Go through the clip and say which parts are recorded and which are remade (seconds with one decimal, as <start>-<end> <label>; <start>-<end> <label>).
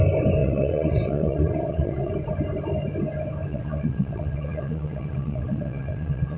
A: 0.0-0.4 recorded; 0.4-2.1 remade; 2.1-3.5 recorded; 3.5-6.4 remade